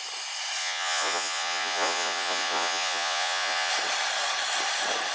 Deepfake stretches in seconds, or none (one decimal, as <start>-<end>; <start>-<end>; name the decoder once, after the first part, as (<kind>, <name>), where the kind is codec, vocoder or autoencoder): 0.6-3.7 (vocoder, Vocos)